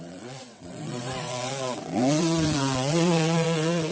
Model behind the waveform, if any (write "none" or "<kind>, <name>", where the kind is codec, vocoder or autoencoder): vocoder, WaveNeXt